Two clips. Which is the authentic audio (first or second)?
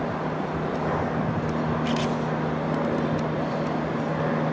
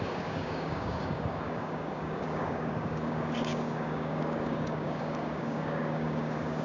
first